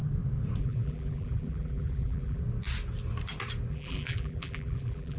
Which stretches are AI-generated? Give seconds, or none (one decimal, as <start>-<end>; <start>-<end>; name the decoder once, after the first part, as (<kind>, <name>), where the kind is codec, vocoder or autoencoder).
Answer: 0.6-2.4 (vocoder, BigVGAN v2); 3.7-5.2